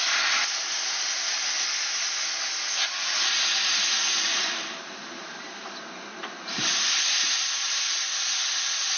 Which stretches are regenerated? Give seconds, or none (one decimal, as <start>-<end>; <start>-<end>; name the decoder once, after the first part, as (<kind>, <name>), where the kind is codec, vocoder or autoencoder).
4.3-7.8 (vocoder, BigVGAN v2)